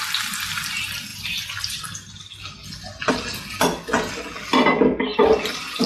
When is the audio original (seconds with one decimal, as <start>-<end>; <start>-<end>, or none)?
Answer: 0.0-5.1